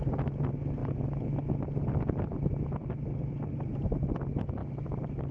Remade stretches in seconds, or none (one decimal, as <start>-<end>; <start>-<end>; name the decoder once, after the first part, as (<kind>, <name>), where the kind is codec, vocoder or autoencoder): 0.8-1.4 (vocoder, BigVGAN v2)

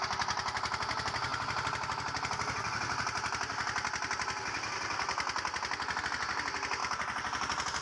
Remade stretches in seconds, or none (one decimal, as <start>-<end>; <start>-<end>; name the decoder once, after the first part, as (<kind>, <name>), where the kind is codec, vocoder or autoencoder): none